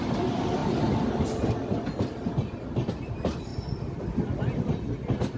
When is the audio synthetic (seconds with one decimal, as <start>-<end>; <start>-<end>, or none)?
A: 0.0-0.6; 2.9-3.5